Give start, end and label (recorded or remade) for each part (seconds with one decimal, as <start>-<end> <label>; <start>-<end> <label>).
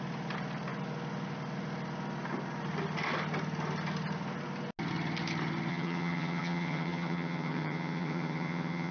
0.0-5.7 recorded; 5.7-8.9 remade